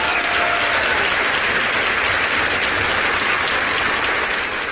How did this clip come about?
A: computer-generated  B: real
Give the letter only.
B